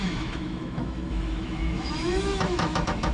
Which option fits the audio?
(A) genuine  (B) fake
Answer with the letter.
B